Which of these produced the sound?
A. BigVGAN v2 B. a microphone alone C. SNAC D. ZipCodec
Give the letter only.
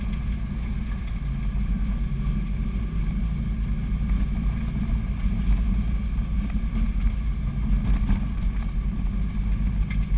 B